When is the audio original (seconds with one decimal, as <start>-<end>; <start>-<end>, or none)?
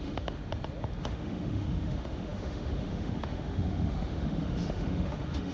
0.4-1.1